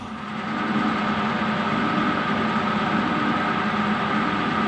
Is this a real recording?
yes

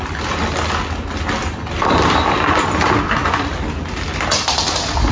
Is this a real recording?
yes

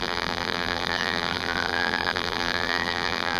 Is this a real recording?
no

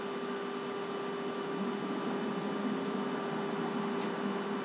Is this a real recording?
yes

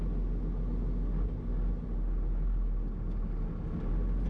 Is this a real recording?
yes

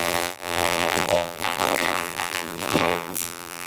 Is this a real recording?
no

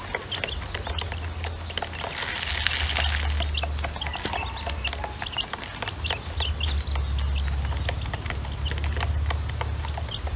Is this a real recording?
yes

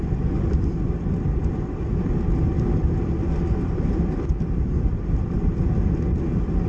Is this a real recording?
yes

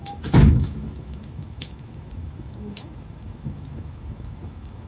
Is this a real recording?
no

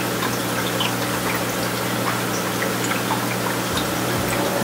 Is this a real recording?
yes